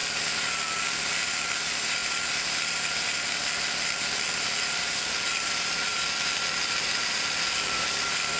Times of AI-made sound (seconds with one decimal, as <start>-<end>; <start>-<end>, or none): 1.0-8.4

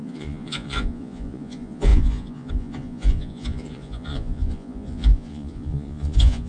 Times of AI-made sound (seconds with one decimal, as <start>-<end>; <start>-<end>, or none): 0.0-6.5

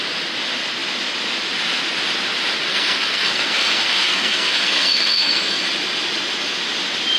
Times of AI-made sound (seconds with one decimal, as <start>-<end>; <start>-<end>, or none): 2.7-5.6

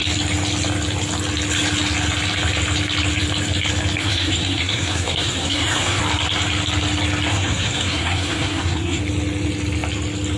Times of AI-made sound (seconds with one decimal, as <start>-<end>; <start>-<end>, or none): 4.0-6.0; 7.3-9.0

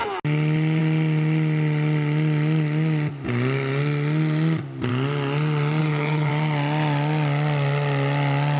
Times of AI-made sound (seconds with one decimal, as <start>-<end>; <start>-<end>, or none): 5.8-6.3

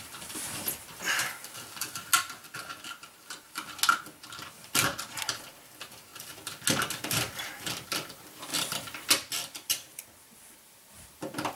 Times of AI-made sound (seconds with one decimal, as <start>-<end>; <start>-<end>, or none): 0.0-2.1; 4.5-4.9; 5.5-6.1; 7.0-8.5; 9.1-11.6

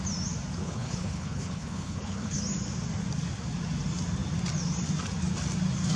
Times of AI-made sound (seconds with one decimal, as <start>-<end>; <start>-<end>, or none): 0.6-2.4

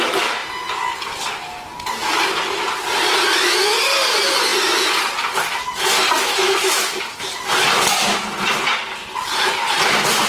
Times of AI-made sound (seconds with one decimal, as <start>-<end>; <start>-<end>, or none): none